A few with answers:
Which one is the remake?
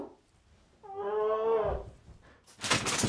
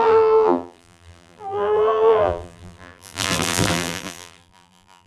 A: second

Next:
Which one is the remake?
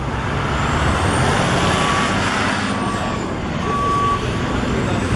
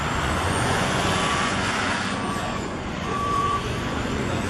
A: second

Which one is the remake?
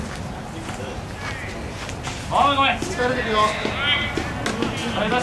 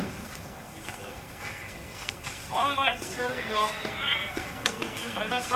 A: second